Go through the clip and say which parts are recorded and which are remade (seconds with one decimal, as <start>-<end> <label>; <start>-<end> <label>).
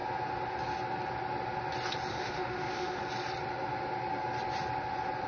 0.0-2.1 recorded; 2.1-3.0 remade; 3.0-5.3 recorded